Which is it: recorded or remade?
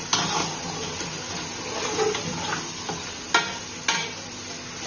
recorded